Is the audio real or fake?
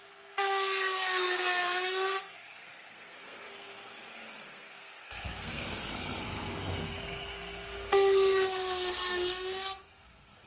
fake